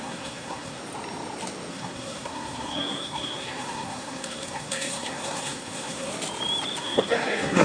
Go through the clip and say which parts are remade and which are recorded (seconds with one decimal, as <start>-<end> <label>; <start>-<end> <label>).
0.0-0.8 remade; 0.8-1.7 recorded; 1.7-6.1 remade; 6.1-6.8 recorded; 6.8-7.6 remade